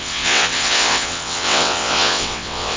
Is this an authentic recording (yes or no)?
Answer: no